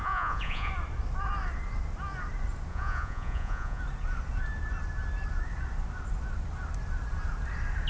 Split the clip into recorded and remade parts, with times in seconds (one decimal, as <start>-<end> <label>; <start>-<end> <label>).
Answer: 0.0-0.7 remade; 0.7-2.7 recorded; 2.7-3.8 remade; 3.8-7.9 recorded